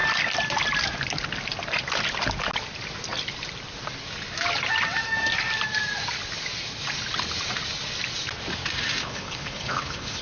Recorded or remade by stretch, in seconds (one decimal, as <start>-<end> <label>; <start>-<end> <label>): 0.0-9.0 recorded; 9.0-10.2 remade